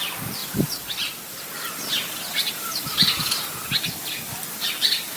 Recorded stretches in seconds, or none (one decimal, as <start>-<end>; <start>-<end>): 0.0-0.4; 3.5-5.2